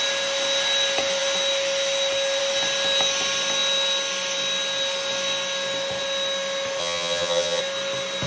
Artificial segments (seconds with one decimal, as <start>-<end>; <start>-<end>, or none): 6.8-7.6